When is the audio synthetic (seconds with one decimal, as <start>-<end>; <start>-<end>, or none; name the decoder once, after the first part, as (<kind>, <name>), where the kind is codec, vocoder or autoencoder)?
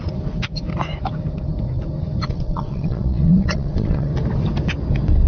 2.2-4.1 (vocoder, WaveNeXt)